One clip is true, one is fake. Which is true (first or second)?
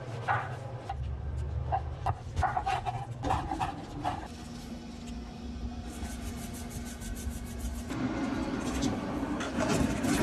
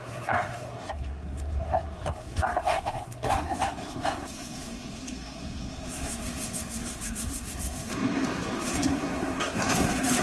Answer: first